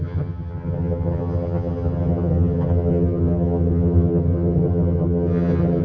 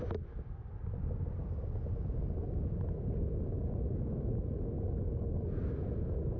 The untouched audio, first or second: second